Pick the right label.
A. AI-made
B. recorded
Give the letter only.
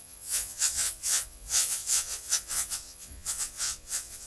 A